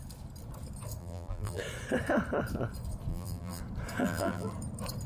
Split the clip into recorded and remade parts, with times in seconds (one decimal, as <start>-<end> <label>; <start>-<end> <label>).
0.0-1.0 recorded; 1.0-1.6 remade; 1.6-3.1 recorded; 3.1-3.6 remade; 3.6-4.0 recorded; 4.0-4.5 remade; 4.5-5.1 recorded